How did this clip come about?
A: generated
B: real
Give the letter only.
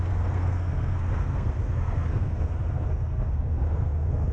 A